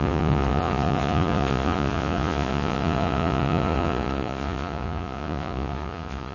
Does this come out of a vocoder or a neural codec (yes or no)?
yes